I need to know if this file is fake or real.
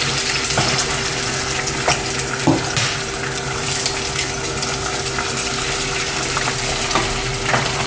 real